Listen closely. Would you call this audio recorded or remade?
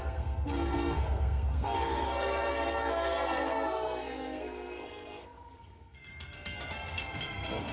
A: remade